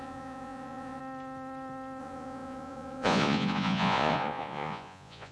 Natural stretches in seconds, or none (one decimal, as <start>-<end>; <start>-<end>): 1.0-2.0